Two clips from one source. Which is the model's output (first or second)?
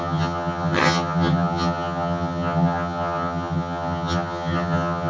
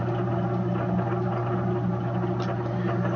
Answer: first